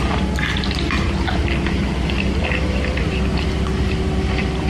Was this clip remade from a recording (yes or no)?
no